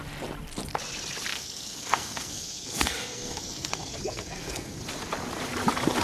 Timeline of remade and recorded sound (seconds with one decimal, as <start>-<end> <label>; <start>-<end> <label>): 0.0-1.3 recorded; 1.3-4.8 remade; 4.8-6.0 recorded